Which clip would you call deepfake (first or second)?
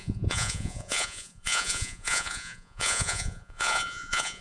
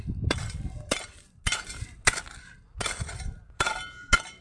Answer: first